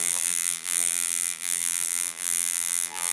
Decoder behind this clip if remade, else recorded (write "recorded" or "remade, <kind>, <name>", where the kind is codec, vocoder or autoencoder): remade, vocoder, BigVGAN v2